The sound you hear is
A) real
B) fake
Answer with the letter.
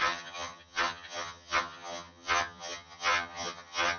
B